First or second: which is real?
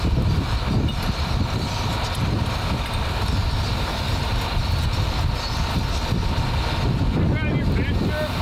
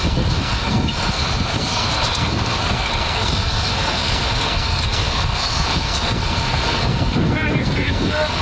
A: first